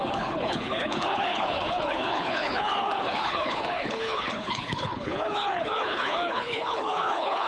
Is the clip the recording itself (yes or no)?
no